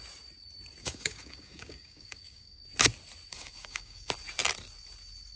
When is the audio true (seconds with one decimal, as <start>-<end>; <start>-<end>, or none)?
0.0-0.8; 2.6-3.3; 4.1-5.4